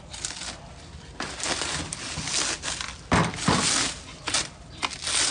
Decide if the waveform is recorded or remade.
recorded